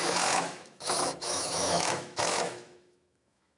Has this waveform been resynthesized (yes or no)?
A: yes